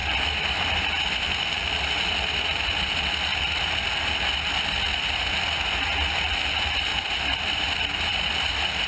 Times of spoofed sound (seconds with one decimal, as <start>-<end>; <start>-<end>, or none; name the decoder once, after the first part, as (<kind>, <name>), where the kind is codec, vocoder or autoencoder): 0.6-3.3 (vocoder, BigVGAN v2); 6.2-8.9